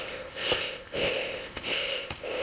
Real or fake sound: fake